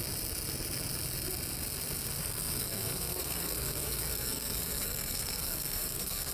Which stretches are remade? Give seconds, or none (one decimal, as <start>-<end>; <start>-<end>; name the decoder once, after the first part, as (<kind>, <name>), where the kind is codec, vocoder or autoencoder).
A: 2.2-6.3 (codec, SNAC)